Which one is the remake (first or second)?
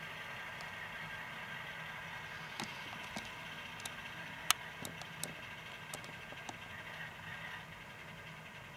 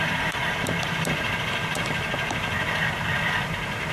second